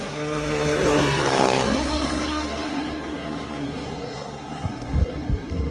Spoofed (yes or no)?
yes